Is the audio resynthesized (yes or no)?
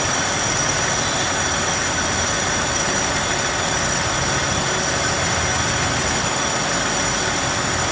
no